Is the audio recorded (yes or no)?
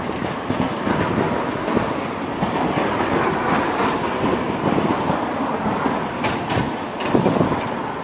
yes